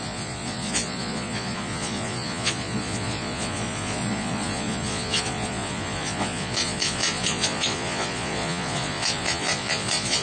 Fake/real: fake